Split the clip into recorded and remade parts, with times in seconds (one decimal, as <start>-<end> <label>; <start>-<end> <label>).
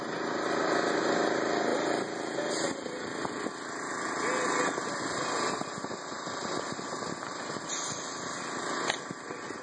0.0-9.6 recorded